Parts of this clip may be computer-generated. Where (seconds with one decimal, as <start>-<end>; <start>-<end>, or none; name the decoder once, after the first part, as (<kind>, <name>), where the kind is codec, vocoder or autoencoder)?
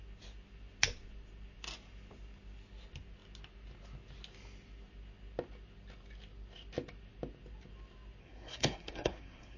8.2-9.6 (codec, SNAC)